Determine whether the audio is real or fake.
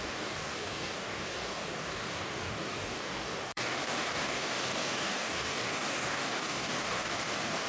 fake